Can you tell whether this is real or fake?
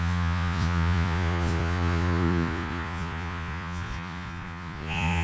fake